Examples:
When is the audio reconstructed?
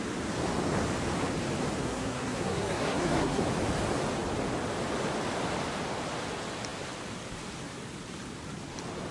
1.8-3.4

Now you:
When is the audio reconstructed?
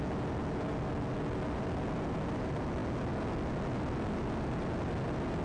none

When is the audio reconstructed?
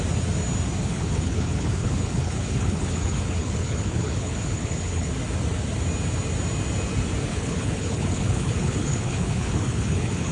0.8-5.1; 7.3-10.3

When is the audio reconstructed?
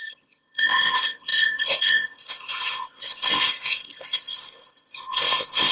0.0-5.7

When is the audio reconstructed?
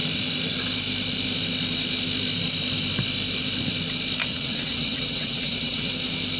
4.3-5.9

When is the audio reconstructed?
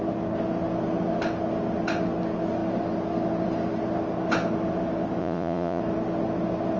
5.2-5.8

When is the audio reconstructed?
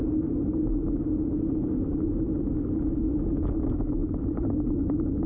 1.6-3.3; 4.0-4.8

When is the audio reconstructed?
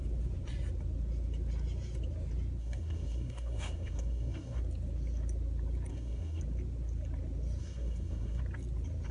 2.6-4.6; 5.9-6.4; 7.6-8.4